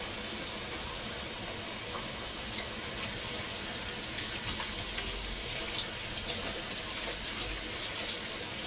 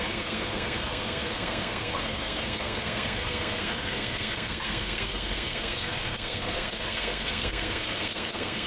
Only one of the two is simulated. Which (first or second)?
second